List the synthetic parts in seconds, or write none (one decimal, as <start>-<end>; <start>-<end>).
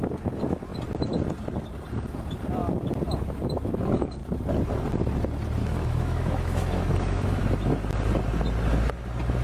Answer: 5.6-7.4